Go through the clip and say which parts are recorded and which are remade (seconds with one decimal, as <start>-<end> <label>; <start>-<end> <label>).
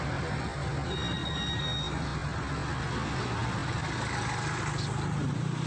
0.0-5.7 recorded